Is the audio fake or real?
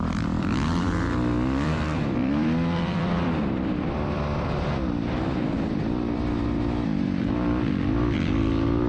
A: fake